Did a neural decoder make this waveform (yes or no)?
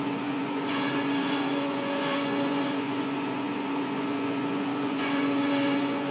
yes